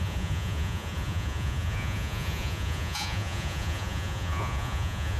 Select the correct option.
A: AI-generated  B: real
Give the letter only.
A